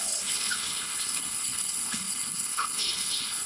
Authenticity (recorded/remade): remade